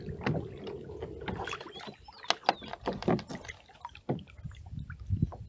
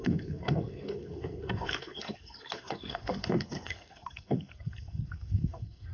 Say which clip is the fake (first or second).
second